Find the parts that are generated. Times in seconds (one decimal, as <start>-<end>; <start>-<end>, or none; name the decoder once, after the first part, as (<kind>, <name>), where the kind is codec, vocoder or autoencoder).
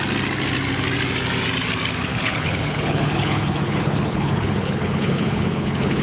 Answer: 2.1-6.0 (codec, HILCodec)